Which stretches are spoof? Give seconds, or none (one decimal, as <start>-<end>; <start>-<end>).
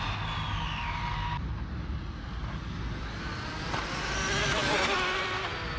none